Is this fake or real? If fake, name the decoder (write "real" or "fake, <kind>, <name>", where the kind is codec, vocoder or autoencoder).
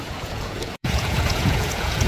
fake, vocoder, Vocos